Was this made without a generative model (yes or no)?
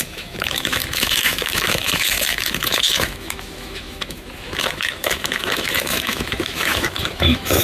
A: no